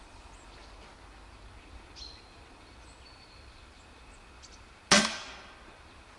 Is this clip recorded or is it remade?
recorded